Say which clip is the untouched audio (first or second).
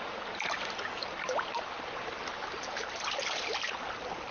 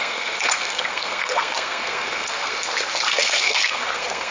first